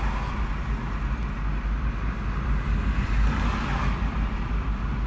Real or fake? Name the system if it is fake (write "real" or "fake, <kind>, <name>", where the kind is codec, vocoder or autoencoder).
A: real